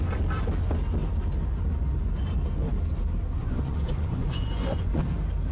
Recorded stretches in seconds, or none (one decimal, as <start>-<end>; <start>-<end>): 0.0-3.4; 5.0-5.5